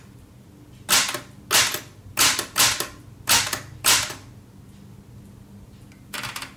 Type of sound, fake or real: real